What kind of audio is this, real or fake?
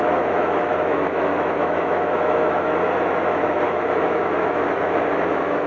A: fake